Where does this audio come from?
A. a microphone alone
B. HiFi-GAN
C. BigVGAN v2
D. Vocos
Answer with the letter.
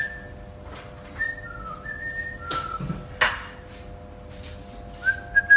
A